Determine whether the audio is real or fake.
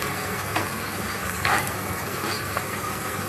fake